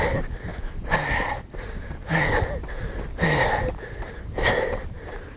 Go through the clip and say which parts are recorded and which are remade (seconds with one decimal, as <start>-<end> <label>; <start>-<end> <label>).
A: 0.0-0.5 remade; 0.5-3.7 recorded; 3.7-5.4 remade